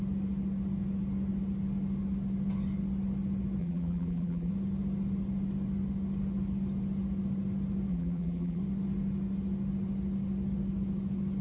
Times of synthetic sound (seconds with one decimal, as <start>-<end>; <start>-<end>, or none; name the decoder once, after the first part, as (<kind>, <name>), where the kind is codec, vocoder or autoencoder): 3.6-4.5 (vocoder, BigVGAN v2); 7.9-8.6

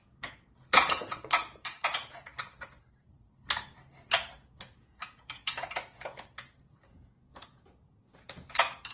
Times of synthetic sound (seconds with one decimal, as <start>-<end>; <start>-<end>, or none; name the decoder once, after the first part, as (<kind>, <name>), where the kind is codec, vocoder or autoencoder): 0.0-2.3 (vocoder, Vocos); 4.1-8.9

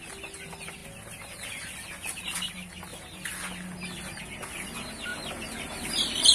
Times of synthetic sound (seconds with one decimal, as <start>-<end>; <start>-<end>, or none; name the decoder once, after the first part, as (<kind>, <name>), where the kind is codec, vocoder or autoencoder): none

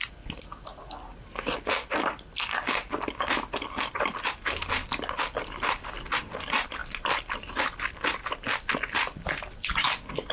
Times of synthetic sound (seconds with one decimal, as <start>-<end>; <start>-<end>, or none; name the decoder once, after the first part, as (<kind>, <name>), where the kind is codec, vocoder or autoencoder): none

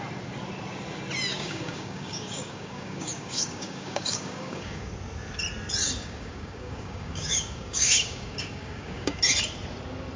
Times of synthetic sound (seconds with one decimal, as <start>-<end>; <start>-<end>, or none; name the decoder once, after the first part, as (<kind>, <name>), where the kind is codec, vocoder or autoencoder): 1.3-4.9 (codec, DAC); 6.0-9.2

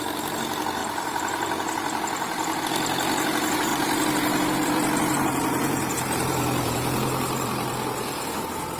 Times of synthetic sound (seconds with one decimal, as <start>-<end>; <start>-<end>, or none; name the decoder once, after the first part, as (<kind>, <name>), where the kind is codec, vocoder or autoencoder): 0.8-2.6 (vocoder, BigVGAN v2); 3.7-8.4

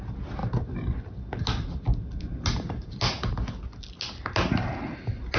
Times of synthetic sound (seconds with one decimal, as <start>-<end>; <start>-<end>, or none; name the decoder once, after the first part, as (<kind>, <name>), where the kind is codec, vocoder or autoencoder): none